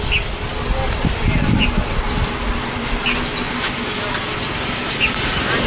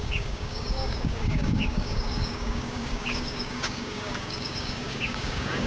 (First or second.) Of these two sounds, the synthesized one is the second